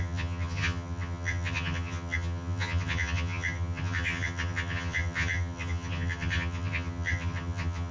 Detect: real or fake fake